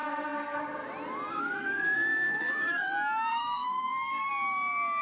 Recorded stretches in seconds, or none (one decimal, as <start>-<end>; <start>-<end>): 0.6-1.3; 2.9-3.3; 4.3-5.0